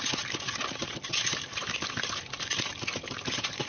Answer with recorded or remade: recorded